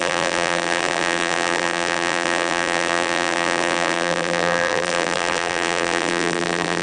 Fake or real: fake